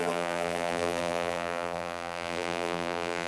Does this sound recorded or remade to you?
remade